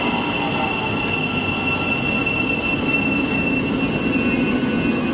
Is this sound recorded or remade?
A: recorded